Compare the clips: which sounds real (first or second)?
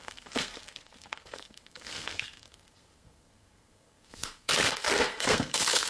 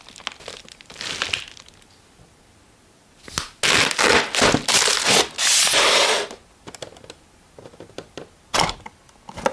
second